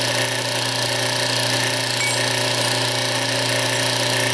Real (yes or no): yes